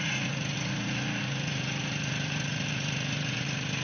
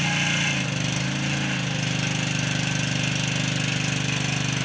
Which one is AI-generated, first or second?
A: first